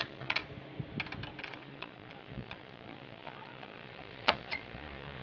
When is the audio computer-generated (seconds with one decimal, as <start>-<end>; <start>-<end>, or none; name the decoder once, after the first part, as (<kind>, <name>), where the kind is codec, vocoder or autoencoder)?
0.0-0.4 (vocoder, Vocos); 1.4-5.2